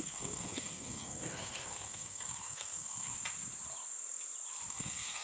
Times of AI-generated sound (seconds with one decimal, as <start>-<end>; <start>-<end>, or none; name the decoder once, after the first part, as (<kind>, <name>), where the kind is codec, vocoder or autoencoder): 0.0-3.1 (codec, SNAC); 4.7-5.2